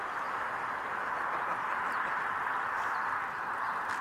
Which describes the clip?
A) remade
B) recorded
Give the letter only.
B